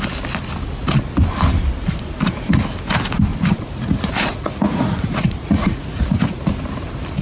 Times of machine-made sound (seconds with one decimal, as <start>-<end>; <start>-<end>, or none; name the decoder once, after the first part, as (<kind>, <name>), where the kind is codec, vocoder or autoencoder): 3.3-6.4 (vocoder, Vocos)